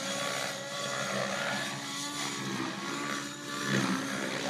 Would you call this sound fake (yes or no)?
no